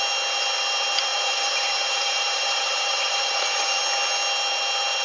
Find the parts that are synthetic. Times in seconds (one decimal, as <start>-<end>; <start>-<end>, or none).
1.1-3.8